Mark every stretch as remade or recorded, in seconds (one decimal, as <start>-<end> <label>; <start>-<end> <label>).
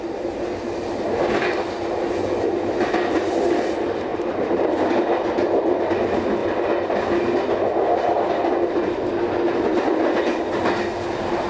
0.0-4.1 recorded; 4.1-5.8 remade; 5.8-11.5 recorded